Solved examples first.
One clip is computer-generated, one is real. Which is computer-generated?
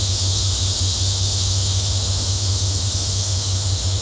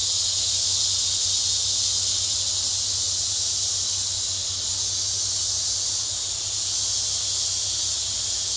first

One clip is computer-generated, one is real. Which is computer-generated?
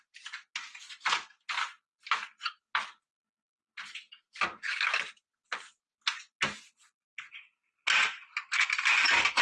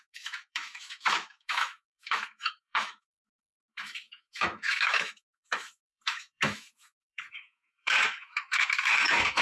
second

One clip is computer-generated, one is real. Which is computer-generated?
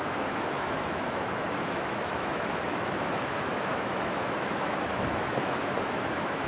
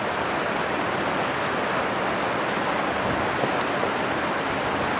first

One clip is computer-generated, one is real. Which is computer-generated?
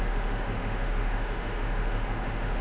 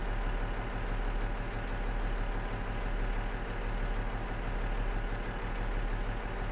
first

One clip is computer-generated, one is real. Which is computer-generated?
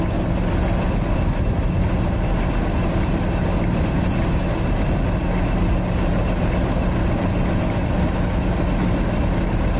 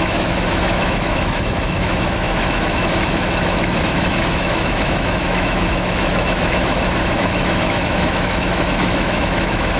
second